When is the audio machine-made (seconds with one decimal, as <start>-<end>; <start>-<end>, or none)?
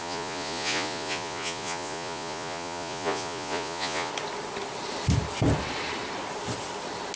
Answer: 0.0-4.1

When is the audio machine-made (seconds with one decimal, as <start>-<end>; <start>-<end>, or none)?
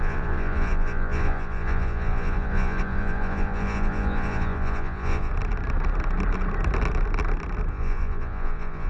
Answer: 0.0-5.3; 7.7-8.9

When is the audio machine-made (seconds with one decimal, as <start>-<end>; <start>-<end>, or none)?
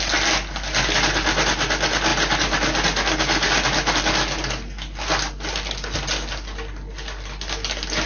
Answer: none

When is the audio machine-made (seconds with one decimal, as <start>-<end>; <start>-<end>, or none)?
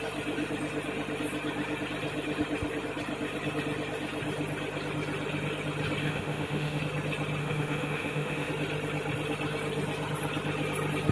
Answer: 6.0-6.8; 7.4-8.5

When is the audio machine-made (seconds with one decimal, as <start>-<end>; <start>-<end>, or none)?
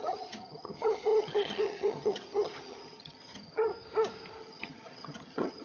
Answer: 0.0-3.7; 4.4-5.6